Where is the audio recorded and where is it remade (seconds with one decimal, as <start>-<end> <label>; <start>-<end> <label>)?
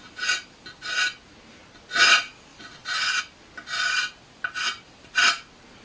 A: 0.0-2.5 recorded; 2.5-3.2 remade; 3.2-5.8 recorded